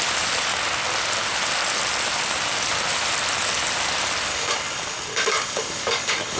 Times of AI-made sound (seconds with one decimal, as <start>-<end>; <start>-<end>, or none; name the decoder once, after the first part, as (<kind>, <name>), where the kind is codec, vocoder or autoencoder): 4.3-6.4 (codec, DAC)